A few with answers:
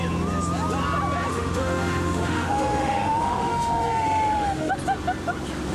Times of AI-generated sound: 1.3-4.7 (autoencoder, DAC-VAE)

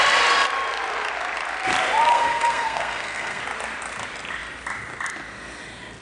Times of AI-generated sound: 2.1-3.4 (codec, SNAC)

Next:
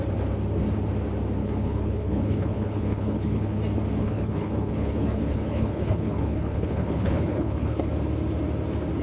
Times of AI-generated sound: 1.4-3.6 (codec, HILCodec); 4.0-7.9